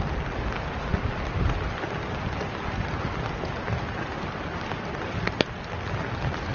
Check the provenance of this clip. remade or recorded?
recorded